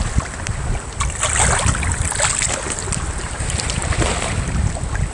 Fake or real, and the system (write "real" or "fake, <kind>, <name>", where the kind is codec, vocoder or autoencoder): real